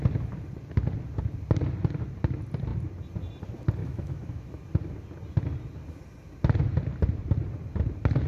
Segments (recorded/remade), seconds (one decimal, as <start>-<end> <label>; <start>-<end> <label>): 0.0-3.8 recorded; 3.8-4.6 remade; 4.6-8.3 recorded